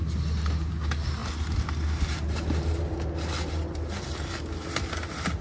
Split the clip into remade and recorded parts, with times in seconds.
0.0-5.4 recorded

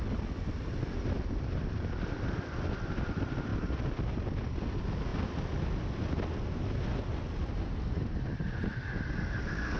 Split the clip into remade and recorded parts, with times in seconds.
0.0-9.8 recorded

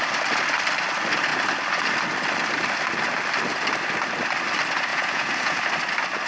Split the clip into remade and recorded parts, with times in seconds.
0.0-4.9 recorded; 4.9-5.6 remade; 5.6-6.3 recorded

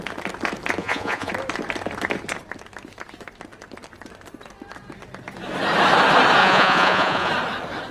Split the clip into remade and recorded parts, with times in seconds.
0.0-0.8 recorded; 0.8-1.3 remade; 1.3-6.4 recorded; 6.4-7.3 remade; 7.3-7.9 recorded

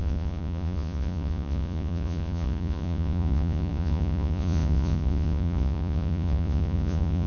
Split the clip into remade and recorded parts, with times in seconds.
0.0-7.3 remade

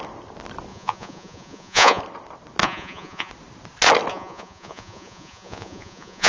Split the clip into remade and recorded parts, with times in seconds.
0.0-0.7 recorded; 0.7-2.0 remade; 2.0-2.6 recorded; 2.6-3.3 remade; 3.3-4.1 recorded; 4.1-6.3 remade

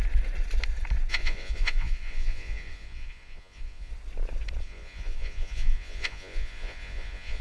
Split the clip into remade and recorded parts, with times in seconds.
0.0-1.1 recorded; 1.1-3.9 remade; 3.9-4.6 recorded; 4.6-7.4 remade